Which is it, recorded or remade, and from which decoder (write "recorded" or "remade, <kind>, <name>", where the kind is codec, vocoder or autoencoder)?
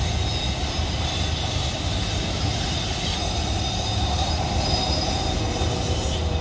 recorded